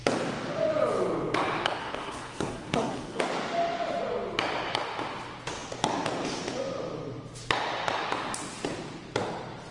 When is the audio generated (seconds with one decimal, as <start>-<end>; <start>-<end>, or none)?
1.8-3.2